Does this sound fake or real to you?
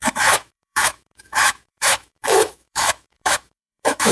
fake